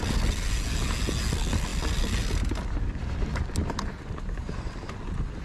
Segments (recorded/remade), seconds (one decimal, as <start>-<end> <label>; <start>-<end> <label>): 0.0-5.4 recorded